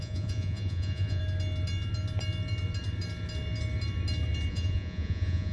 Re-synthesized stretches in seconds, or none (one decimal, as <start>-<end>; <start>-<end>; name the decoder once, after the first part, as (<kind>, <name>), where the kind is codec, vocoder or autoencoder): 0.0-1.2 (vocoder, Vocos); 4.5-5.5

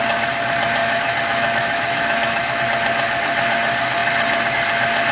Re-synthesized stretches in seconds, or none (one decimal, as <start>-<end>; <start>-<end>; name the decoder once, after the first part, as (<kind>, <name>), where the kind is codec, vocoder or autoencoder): 0.8-2.6 (autoencoder, DAC-VAE)

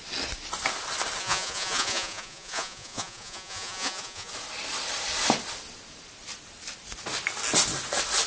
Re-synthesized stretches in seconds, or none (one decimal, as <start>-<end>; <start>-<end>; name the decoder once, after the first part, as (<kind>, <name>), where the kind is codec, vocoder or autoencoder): 1.2-4.3 (vocoder, Vocos)

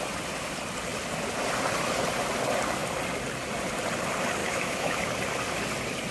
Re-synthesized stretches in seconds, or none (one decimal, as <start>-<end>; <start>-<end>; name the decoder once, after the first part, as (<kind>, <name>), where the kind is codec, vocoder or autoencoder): 4.4-5.1 (autoencoder, DAC-VAE)

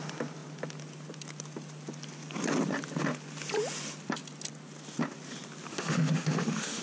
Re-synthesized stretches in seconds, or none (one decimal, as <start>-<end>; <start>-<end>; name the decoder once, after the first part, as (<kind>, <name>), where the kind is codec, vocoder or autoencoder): 5.7-6.8 (autoencoder, DAC-VAE)

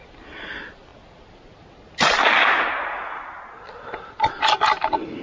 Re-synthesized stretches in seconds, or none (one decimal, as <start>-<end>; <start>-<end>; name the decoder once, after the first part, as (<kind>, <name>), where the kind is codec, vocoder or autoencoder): none

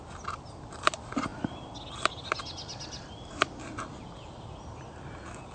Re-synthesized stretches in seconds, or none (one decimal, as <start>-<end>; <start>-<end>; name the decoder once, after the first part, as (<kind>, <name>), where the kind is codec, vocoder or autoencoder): none